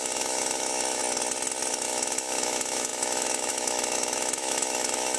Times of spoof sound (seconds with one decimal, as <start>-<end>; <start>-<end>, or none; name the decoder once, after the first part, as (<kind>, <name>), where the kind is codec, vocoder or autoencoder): 0.0-1.0 (autoencoder, DAC-VAE); 1.7-5.2